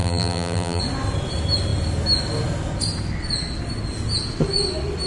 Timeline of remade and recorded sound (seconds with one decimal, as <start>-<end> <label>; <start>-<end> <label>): 0.0-0.8 remade; 0.8-5.1 recorded